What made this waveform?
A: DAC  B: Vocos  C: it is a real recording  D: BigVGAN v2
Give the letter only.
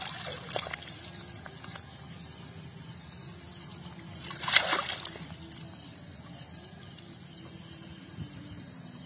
C